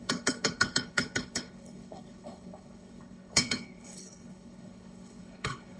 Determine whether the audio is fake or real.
fake